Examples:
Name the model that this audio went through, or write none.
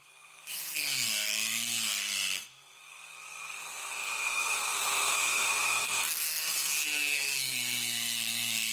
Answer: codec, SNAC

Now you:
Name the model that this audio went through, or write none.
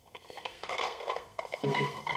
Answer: codec, SNAC